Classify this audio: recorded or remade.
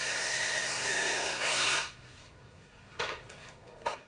remade